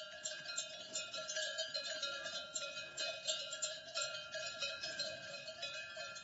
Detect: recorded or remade remade